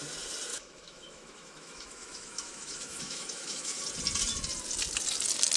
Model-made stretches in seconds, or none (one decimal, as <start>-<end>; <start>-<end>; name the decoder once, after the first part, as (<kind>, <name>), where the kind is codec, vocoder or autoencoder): 0.5-3.8 (autoencoder, DAC-VAE)